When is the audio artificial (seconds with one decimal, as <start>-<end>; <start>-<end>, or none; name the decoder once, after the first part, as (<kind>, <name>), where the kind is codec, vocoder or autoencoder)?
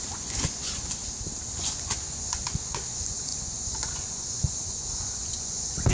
0.0-1.0 (vocoder, Vocos); 1.5-5.9